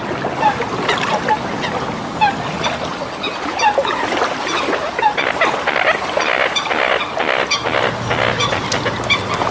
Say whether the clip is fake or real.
real